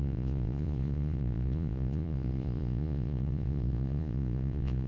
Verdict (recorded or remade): remade